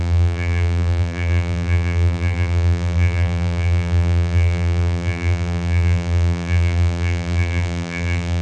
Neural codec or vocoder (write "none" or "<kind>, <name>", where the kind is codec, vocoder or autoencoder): vocoder, BigVGAN v2